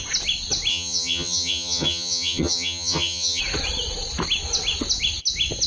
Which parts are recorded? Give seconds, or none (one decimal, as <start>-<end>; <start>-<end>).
0.0-0.7; 3.4-5.7